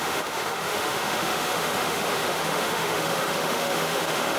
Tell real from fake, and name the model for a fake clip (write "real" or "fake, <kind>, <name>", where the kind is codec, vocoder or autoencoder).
fake, autoencoder, DAC-VAE